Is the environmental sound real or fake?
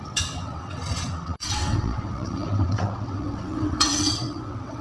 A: fake